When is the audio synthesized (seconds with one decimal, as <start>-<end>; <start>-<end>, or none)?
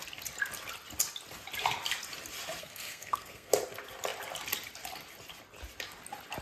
2.6-3.5